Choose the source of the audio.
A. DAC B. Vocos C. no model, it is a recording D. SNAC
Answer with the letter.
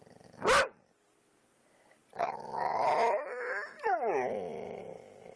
C